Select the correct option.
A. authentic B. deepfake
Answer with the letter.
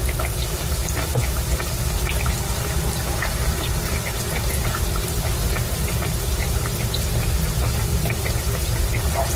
A